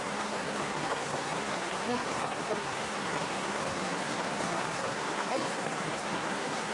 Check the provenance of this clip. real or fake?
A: fake